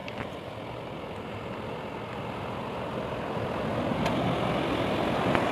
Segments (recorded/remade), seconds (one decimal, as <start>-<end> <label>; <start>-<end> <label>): 0.0-2.6 recorded; 2.6-3.7 remade; 3.7-5.5 recorded